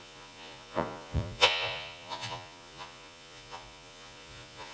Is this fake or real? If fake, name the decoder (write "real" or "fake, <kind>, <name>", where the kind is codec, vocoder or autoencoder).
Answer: fake, vocoder, Vocos